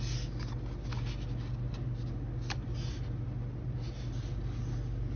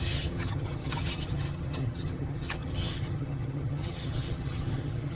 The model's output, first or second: second